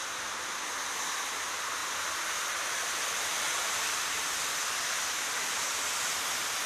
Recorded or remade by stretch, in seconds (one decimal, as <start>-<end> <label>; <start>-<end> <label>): 0.0-6.7 recorded